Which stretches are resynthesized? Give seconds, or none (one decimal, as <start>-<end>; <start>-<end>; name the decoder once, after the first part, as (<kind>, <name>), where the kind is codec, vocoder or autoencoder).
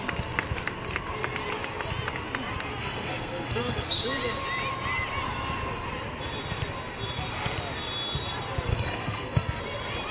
2.8-4.0 (codec, SNAC); 8.7-9.6